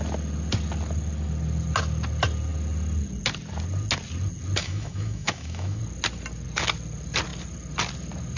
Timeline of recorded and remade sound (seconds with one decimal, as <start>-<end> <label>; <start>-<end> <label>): 0.0-4.6 recorded; 4.6-5.8 remade; 5.8-8.4 recorded